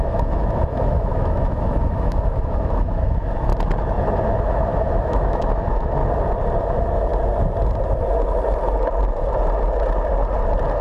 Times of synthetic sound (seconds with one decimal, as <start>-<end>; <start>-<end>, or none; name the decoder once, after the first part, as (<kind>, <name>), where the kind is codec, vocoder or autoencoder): 0.0-3.5 (autoencoder, DAC-VAE); 4.3-6.0; 6.6-7.1